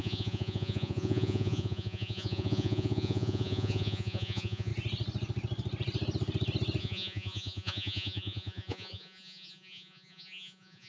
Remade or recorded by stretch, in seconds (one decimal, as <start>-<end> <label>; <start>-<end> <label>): 0.0-4.7 remade; 4.7-6.8 recorded; 6.8-10.9 remade